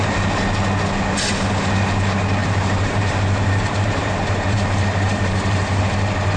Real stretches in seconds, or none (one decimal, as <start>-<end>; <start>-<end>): 0.0-2.4; 5.8-6.4